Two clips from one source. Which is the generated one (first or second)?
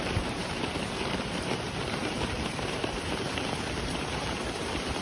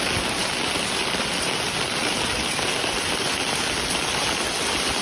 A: first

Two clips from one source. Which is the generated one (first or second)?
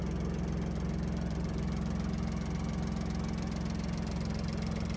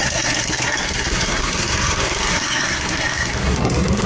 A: second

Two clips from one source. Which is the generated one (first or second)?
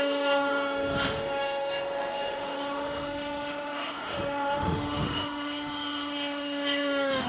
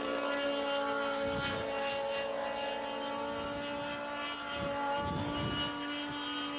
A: first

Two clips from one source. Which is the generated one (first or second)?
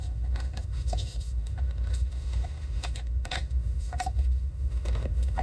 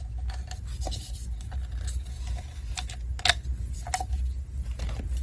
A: first